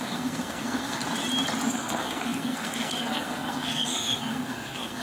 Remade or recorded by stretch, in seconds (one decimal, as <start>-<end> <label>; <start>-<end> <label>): 0.0-1.0 remade; 1.0-1.7 recorded; 1.7-5.0 remade